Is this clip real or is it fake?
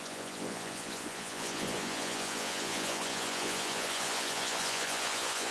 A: fake